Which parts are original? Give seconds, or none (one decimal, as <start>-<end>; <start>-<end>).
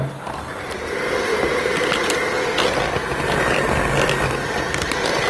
0.0-5.3